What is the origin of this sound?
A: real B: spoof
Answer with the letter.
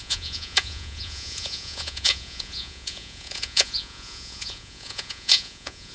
B